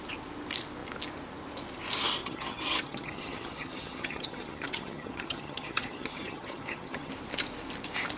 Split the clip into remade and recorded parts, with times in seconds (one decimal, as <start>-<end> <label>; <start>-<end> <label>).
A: 0.0-2.2 recorded; 2.2-7.1 remade; 7.1-8.2 recorded